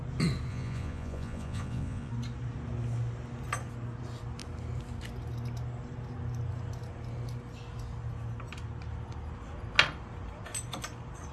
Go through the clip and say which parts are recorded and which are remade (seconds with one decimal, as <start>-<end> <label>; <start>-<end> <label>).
0.0-0.5 recorded; 0.5-2.1 remade; 2.1-11.3 recorded